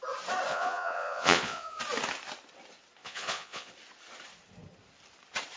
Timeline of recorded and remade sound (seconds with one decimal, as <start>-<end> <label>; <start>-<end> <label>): 0.0-0.5 recorded; 0.5-1.8 remade; 1.8-3.0 recorded; 3.0-3.7 remade; 3.7-5.6 recorded

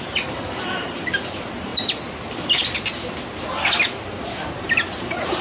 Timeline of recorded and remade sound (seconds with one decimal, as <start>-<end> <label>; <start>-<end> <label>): 0.0-1.7 remade; 1.7-4.9 recorded; 4.9-5.4 remade

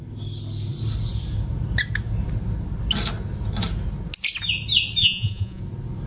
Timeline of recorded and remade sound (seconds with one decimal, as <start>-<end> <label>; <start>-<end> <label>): 0.0-5.0 recorded; 5.0-5.6 remade; 5.6-6.1 recorded